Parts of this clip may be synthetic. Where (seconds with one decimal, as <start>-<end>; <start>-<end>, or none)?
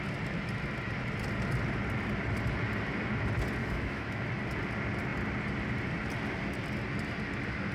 3.6-4.3